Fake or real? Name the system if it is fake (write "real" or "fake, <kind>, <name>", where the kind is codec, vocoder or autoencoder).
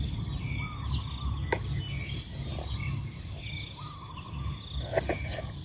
real